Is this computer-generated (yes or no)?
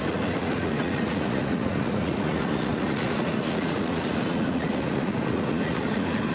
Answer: yes